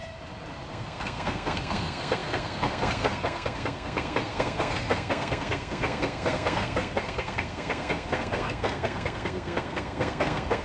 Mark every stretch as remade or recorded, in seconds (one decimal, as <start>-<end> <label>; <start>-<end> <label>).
0.0-0.7 recorded; 0.7-10.6 remade